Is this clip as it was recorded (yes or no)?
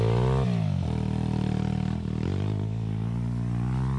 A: yes